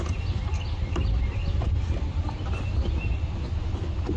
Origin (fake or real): real